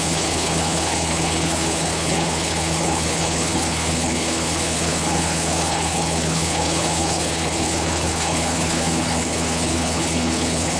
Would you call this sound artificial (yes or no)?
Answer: yes